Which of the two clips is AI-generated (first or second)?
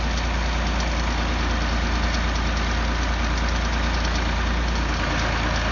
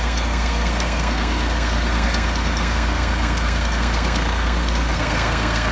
second